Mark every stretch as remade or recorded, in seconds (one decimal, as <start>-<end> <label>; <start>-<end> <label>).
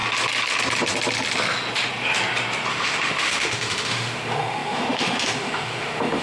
0.0-2.7 recorded; 2.7-6.2 remade